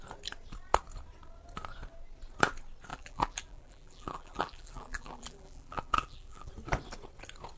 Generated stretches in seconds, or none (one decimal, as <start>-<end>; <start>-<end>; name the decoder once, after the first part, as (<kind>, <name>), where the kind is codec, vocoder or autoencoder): 2.9-6.5 (vocoder, BigVGAN v2)